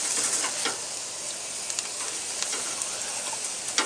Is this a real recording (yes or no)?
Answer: yes